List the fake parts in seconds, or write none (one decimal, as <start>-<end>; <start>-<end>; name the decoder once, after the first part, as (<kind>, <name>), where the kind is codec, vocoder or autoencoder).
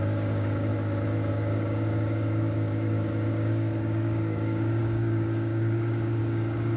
0.0-0.7 (codec, DAC); 1.3-6.8